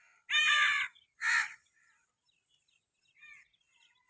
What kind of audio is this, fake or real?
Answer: real